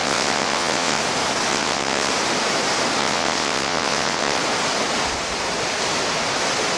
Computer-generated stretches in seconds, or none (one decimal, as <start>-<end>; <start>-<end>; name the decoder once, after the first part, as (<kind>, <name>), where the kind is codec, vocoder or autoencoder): 0.0-1.0 (vocoder, WaveNeXt); 1.5-2.1; 3.0-4.4